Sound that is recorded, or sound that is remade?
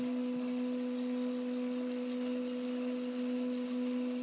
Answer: recorded